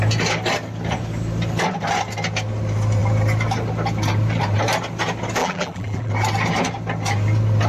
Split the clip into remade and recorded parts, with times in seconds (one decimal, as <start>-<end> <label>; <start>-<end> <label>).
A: 0.0-5.4 recorded; 5.4-6.1 remade; 6.1-7.7 recorded

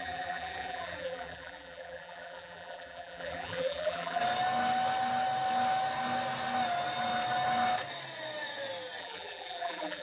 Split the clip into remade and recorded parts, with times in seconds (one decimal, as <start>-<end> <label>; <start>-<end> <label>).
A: 0.0-4.2 remade; 4.2-9.0 recorded; 9.0-10.0 remade

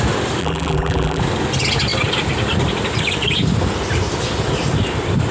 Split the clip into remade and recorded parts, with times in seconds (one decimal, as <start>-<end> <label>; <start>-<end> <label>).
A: 0.0-0.4 recorded; 0.4-1.2 remade; 1.2-5.3 recorded